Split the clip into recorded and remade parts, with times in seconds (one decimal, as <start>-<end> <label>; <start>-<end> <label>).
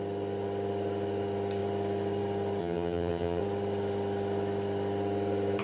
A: 0.0-2.6 recorded; 2.6-3.4 remade; 3.4-5.6 recorded